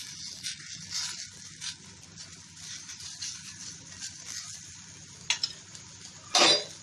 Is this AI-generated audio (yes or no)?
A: no